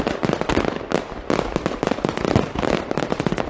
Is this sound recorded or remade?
recorded